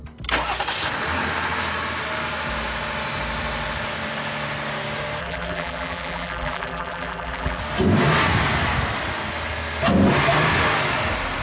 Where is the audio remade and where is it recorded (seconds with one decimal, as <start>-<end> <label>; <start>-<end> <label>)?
0.0-5.2 recorded; 5.2-7.6 remade; 7.6-11.4 recorded